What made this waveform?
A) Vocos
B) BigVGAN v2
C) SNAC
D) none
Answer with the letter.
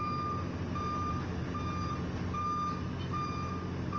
D